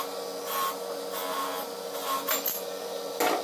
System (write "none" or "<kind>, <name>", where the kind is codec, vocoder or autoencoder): none